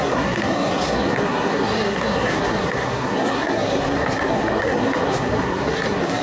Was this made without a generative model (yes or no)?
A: no